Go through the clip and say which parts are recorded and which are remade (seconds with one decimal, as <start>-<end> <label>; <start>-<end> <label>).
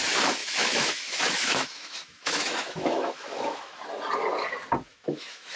0.0-0.4 recorded; 0.4-3.8 remade; 3.8-4.9 recorded; 4.9-5.6 remade